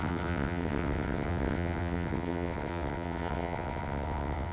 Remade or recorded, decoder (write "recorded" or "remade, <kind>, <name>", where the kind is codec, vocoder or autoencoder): remade, vocoder, WaveNeXt